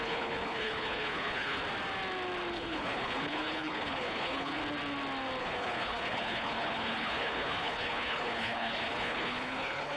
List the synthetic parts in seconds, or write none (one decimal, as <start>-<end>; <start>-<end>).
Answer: 0.0-1.6; 2.5-4.6; 5.4-10.0